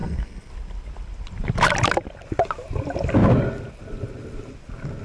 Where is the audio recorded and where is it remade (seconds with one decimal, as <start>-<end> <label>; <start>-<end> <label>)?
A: 0.0-0.5 remade; 0.5-5.0 recorded